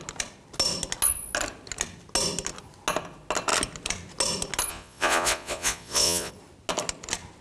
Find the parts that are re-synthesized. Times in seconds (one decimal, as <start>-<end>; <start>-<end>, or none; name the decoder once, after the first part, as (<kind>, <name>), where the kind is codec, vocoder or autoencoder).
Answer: 4.7-6.3 (vocoder, Vocos)